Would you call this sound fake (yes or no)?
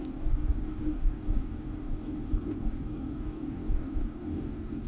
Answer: yes